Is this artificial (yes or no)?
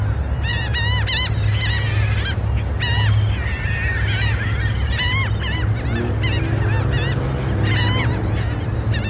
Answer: no